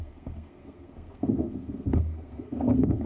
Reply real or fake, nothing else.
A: fake